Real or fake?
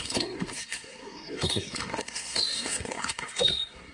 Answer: fake